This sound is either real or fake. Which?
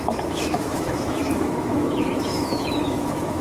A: fake